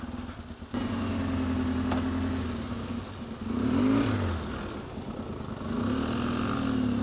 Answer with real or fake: real